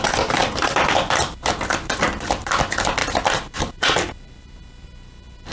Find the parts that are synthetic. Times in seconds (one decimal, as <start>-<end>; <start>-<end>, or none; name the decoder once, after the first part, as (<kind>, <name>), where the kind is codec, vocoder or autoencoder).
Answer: 0.0-3.0 (vocoder, BigVGAN v2); 3.6-5.5